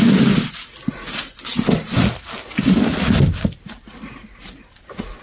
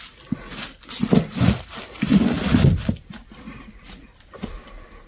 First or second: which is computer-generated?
second